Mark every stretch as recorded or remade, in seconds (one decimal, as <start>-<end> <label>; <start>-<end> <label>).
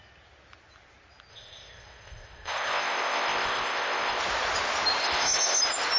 0.0-1.3 recorded; 1.3-4.2 remade; 4.2-5.0 recorded; 5.0-5.6 remade; 5.6-6.0 recorded